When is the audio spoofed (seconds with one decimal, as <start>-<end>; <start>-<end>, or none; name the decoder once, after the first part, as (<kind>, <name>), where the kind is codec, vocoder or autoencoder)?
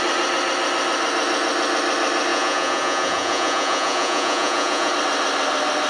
2.3-4.9 (vocoder, Vocos)